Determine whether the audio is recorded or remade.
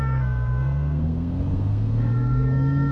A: remade